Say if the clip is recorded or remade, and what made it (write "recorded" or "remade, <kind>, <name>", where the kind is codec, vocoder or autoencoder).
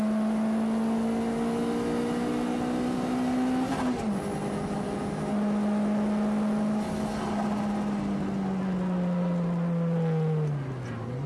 recorded